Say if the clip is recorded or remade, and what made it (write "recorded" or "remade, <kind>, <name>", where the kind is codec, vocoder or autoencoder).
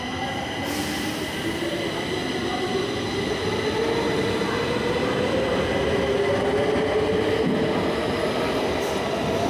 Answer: recorded